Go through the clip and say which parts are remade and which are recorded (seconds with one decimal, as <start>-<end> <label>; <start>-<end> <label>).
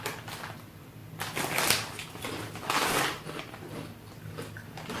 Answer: 0.0-5.0 recorded